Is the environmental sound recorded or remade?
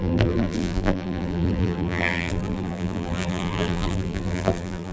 remade